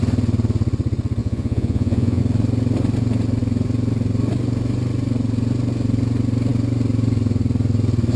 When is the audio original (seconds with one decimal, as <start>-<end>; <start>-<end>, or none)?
0.0-1.2; 2.2-8.2